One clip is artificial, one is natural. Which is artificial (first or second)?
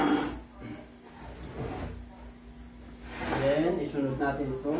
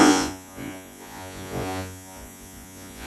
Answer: second